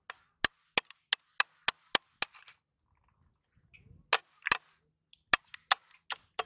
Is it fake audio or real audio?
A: real